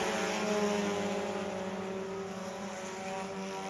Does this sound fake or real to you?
real